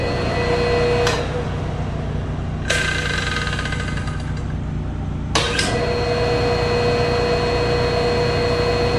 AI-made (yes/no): no